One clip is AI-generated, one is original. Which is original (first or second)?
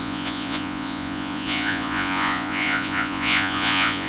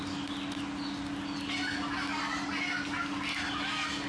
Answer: second